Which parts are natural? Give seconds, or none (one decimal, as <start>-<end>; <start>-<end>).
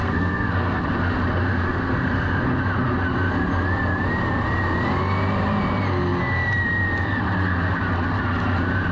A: 0.8-1.5; 2.4-8.9